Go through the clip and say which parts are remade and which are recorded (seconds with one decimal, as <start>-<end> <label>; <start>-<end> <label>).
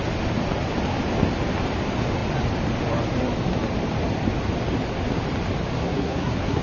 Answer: 0.0-5.8 recorded; 5.8-6.6 remade